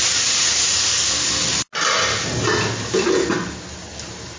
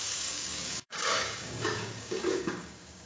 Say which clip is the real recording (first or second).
first